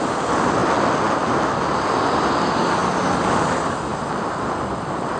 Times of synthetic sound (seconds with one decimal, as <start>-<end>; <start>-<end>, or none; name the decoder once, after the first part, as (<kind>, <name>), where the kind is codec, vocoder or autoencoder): none